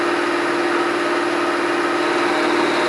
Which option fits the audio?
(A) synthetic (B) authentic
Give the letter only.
B